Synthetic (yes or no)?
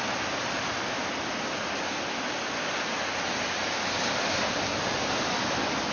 no